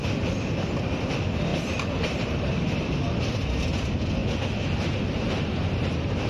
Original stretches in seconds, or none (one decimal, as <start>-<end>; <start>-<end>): 0.0-1.5; 2.5-6.3